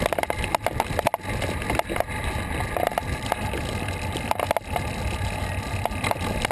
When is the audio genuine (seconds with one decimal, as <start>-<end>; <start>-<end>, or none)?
0.0-6.5